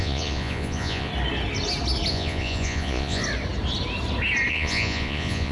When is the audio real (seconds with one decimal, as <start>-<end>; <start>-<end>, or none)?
1.1-2.1; 3.2-4.5